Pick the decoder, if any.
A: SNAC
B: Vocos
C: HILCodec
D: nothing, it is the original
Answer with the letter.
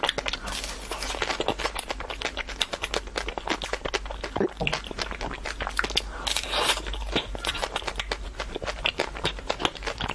D